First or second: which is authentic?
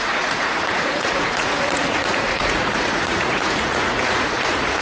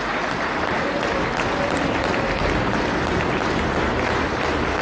second